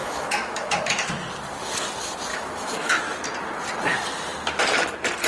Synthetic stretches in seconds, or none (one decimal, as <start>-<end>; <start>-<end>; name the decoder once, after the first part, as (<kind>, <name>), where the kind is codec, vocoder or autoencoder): 0.0-1.1 (autoencoder, DAC-VAE); 2.3-3.0